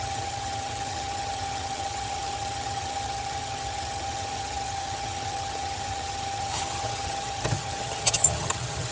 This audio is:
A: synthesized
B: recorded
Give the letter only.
A